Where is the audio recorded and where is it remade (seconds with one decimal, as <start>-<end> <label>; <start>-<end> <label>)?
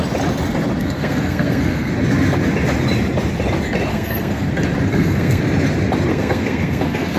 0.0-0.8 recorded; 0.8-1.9 remade; 1.9-3.9 recorded; 3.9-4.5 remade; 4.5-4.9 recorded; 4.9-5.4 remade; 5.4-6.1 recorded; 6.1-7.2 remade